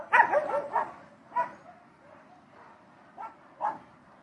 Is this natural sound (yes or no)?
yes